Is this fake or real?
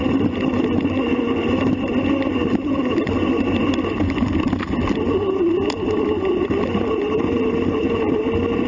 real